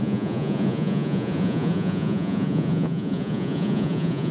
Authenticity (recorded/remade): remade